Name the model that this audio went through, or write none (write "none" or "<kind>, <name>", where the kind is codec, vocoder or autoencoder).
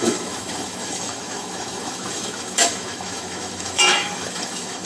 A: autoencoder, DAC-VAE